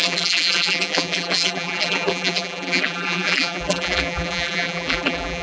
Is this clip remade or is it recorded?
remade